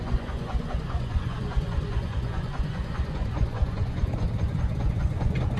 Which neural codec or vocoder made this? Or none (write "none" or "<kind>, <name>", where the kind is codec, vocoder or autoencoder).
vocoder, Vocos